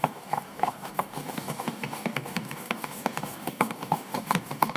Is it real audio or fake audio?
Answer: fake